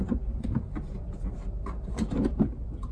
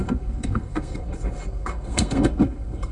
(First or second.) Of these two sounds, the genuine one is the first